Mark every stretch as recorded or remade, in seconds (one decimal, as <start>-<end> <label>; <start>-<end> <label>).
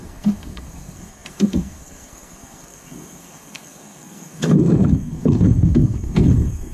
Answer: 0.0-6.7 remade